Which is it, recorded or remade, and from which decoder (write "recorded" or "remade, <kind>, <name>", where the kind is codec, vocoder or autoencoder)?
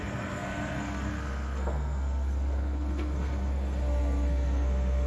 remade, codec, SNAC